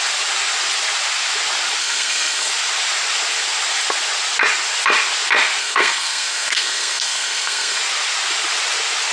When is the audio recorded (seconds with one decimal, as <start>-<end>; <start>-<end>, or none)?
0.0-1.8; 2.5-5.6; 7.8-9.1